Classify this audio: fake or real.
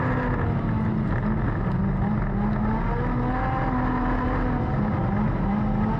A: real